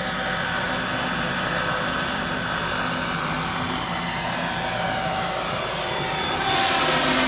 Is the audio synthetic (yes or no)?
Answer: no